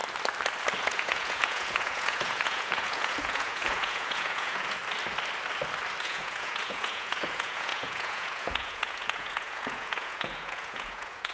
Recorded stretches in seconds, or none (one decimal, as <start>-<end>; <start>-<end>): 0.0-0.8; 4.8-6.0